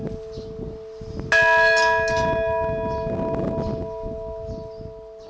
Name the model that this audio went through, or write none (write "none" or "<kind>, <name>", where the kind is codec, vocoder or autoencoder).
none